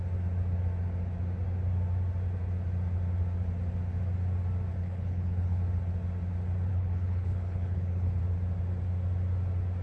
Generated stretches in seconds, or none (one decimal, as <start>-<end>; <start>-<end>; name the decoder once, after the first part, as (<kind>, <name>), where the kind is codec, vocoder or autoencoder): 4.8-5.6 (codec, HILCodec); 6.7-8.2